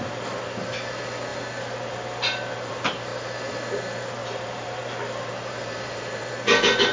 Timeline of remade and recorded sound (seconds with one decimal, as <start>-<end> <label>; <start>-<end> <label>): 0.0-4.2 recorded; 4.2-6.2 remade; 6.2-6.9 recorded